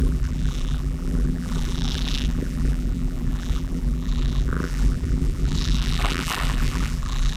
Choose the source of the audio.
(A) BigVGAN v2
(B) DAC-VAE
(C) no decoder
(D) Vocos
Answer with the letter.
A